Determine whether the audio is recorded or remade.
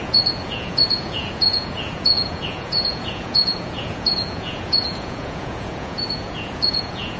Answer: remade